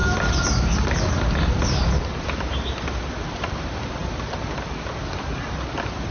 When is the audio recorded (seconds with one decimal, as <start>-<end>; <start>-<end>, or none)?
0.0-6.1